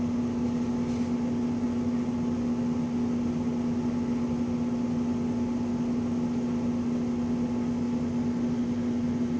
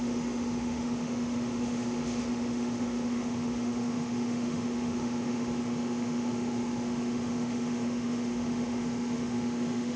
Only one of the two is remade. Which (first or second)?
second